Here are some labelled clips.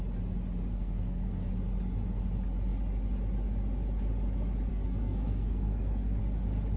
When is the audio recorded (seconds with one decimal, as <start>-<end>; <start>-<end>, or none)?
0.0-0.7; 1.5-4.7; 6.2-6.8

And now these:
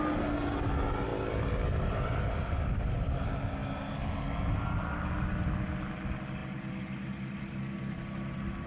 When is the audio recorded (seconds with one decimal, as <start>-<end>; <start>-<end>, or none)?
0.0-8.7

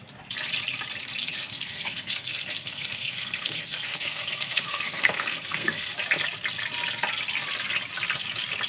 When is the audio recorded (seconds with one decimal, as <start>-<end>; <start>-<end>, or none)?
0.0-1.2; 5.9-8.7

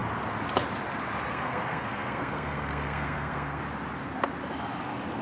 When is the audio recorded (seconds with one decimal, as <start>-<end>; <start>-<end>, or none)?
0.0-1.3; 3.6-5.2